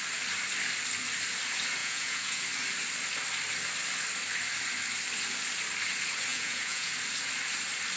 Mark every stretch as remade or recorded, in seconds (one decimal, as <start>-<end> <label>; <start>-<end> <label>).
0.0-1.8 recorded; 1.8-2.4 remade; 2.4-6.3 recorded; 6.3-6.9 remade; 6.9-8.0 recorded